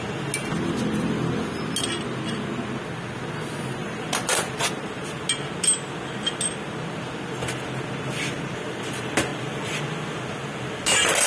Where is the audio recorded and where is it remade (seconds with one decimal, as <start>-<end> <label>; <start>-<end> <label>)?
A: 0.0-3.8 recorded; 3.8-4.7 remade; 4.7-9.3 recorded; 9.3-9.8 remade; 9.8-11.3 recorded